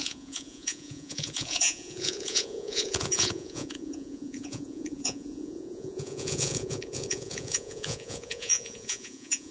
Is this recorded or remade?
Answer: remade